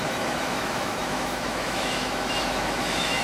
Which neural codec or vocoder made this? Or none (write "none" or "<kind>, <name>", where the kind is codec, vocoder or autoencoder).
autoencoder, DAC-VAE